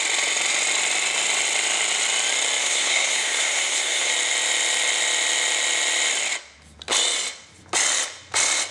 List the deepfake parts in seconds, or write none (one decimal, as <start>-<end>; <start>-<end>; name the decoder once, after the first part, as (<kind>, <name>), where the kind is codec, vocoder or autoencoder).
2.6-4.1 (codec, SNAC)